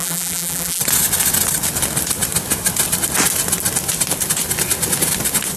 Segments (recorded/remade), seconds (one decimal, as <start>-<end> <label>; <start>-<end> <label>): 0.0-0.8 remade; 0.8-5.6 recorded